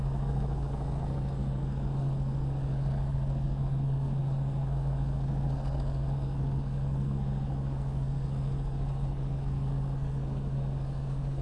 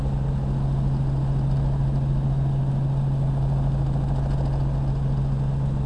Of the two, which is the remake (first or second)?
first